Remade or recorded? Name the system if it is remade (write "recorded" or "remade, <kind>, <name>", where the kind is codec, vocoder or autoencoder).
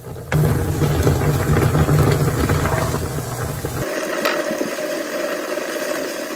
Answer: recorded